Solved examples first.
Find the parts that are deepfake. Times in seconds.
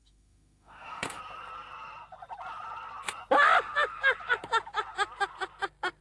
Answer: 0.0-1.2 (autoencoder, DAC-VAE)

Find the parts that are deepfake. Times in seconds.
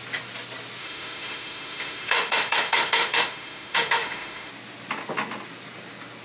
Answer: 0.8-4.5 (autoencoder, DAC-VAE)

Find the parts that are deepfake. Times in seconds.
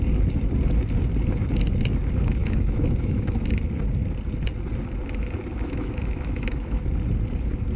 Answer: 2.4-3.4 (autoencoder, DAC-VAE); 5.5-6.8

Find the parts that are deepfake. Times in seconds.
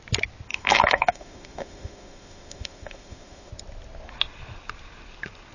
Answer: 0.5-3.5 (autoencoder, DAC-VAE)